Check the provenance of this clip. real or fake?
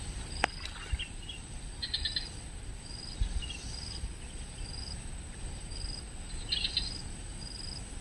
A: real